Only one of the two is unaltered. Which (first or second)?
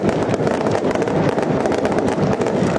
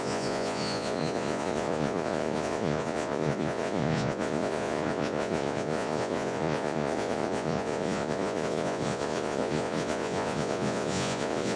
first